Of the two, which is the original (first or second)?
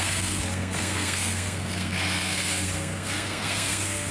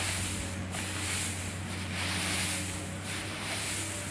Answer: second